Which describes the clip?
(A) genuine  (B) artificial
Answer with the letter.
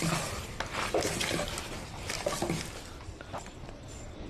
A